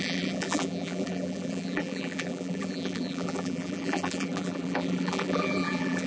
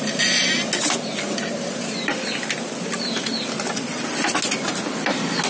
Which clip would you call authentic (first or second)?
second